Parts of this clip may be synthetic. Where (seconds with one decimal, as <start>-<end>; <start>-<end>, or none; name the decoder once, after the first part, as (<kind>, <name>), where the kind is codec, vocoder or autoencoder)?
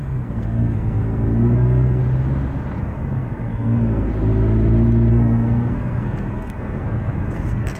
0.0-2.0 (codec, SNAC); 2.8-4.1; 5.1-7.8